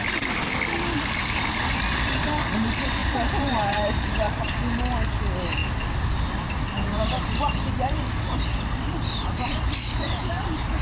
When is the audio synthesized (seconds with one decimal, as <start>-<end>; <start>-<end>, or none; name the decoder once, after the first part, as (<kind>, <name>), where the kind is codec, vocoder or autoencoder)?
3.0-4.5 (vocoder, BigVGAN v2)